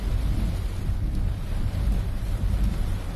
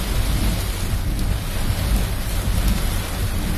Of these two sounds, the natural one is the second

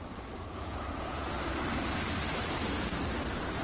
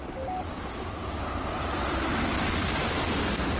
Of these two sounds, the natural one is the second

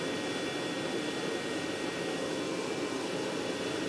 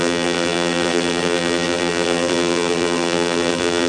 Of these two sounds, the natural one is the first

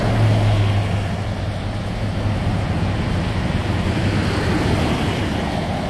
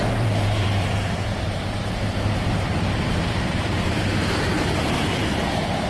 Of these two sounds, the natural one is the first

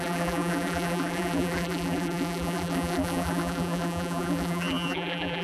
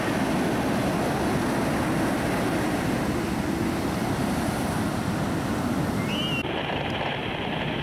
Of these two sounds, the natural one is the second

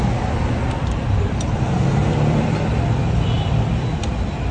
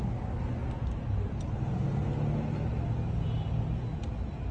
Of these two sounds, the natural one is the second